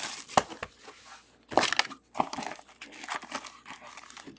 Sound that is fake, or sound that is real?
real